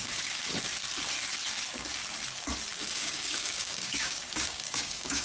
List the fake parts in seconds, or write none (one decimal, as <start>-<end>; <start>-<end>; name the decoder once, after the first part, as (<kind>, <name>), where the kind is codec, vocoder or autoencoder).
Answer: 0.0-0.5 (codec, DAC); 1.5-2.0; 2.8-5.2